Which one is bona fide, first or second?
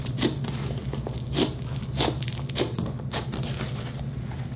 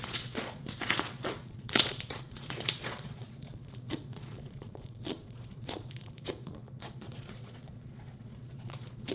first